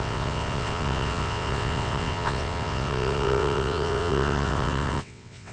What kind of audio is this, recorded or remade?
remade